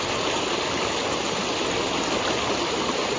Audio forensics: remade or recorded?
remade